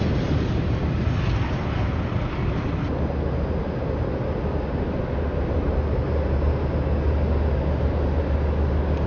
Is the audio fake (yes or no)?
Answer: no